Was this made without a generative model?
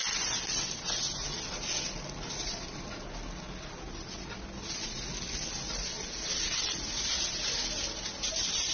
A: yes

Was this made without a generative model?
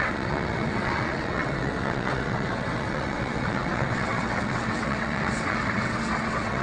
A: no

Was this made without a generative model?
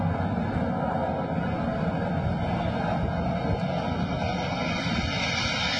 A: yes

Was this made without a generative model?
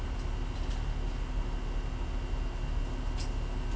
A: yes